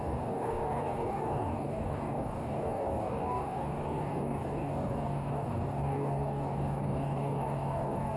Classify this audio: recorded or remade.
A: remade